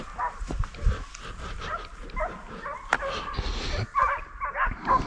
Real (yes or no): yes